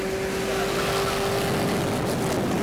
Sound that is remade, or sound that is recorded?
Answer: recorded